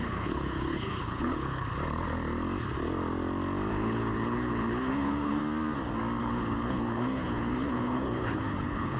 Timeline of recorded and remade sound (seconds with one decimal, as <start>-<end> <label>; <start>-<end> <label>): 0.0-1.7 remade; 1.7-3.7 recorded; 3.7-5.4 remade; 5.4-6.2 recorded; 6.2-9.0 remade

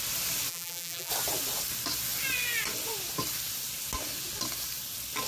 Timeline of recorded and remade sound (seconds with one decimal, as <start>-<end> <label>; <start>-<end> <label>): 0.0-0.5 recorded; 0.5-1.1 remade; 1.1-5.3 recorded

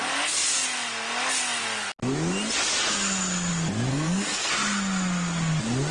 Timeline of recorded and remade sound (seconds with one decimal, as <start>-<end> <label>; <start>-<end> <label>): 0.0-3.9 recorded; 3.9-4.5 remade; 4.5-5.9 recorded

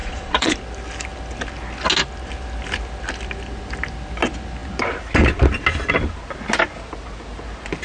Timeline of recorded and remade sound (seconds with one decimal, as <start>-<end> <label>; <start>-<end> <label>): 0.0-0.6 remade; 0.6-7.8 recorded

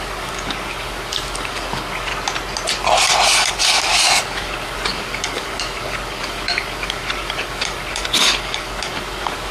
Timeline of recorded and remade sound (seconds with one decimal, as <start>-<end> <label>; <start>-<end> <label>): 0.0-2.1 remade; 2.1-3.5 recorded; 3.5-9.5 remade

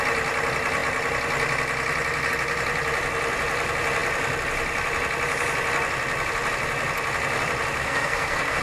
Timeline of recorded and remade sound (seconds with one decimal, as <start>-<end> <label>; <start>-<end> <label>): 0.0-7.8 recorded; 7.8-8.6 remade

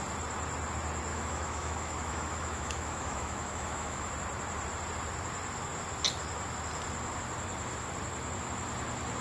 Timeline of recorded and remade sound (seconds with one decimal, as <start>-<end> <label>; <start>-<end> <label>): 0.0-1.1 recorded; 1.1-4.1 remade; 4.1-9.2 recorded

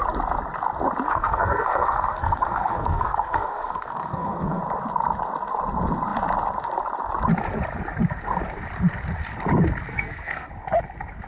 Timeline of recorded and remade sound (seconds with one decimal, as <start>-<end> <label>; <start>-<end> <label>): 0.0-1.1 recorded; 1.1-4.6 remade; 4.6-9.9 recorded; 9.9-10.5 remade; 10.5-11.3 recorded